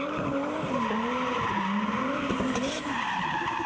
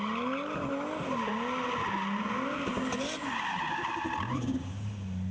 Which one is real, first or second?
second